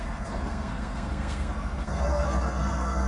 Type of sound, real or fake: fake